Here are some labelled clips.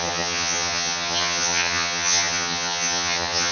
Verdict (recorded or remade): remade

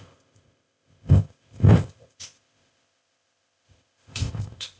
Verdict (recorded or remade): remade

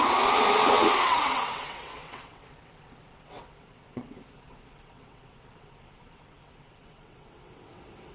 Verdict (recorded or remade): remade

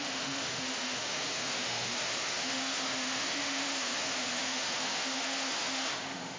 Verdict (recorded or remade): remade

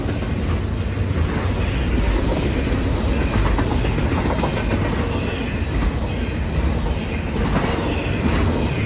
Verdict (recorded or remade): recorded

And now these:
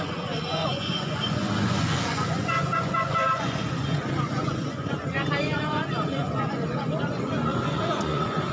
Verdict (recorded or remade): remade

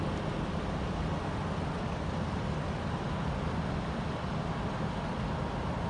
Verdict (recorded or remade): recorded